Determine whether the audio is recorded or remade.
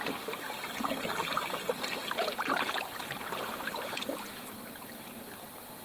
remade